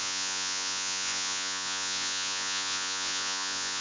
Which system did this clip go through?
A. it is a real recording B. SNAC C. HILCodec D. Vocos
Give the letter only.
D